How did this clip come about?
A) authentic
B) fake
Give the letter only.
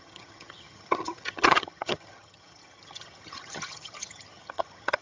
B